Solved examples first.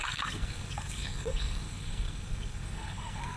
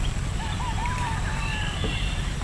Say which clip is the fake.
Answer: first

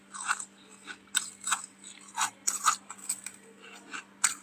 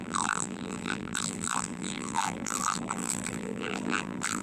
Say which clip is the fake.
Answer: second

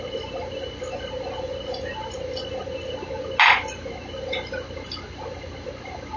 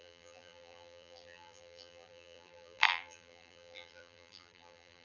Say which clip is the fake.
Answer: second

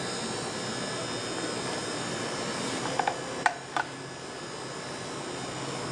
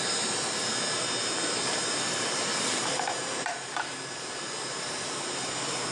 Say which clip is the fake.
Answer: second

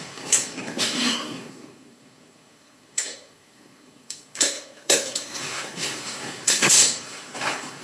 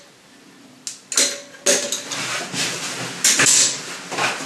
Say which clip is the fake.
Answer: first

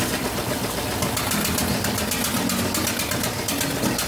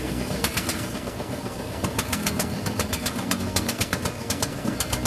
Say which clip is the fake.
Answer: second